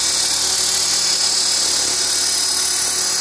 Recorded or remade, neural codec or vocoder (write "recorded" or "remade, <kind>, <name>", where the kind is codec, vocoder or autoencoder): recorded